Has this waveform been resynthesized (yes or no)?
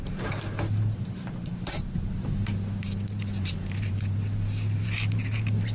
yes